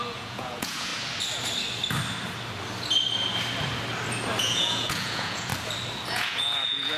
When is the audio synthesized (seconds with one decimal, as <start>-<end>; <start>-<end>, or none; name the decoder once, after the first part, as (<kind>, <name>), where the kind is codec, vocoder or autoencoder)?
0.0-0.9 (vocoder, Vocos); 4.4-5.5; 6.1-7.0